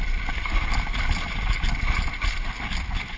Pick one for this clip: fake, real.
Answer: real